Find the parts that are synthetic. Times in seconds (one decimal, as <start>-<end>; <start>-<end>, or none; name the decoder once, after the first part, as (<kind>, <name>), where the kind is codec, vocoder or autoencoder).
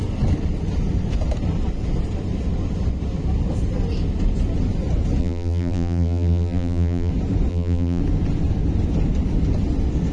5.2-7.1 (vocoder, BigVGAN v2); 7.5-8.0